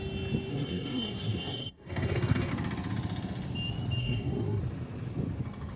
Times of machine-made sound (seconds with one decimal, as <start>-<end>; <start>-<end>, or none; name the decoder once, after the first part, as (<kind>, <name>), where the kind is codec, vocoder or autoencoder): 0.5-2.5 (codec, SNAC); 4.0-4.6